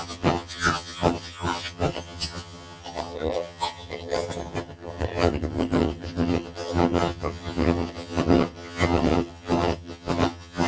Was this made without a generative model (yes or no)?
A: no